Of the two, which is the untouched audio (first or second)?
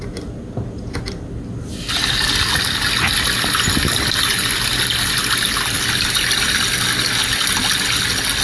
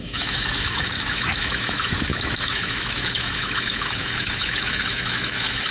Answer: first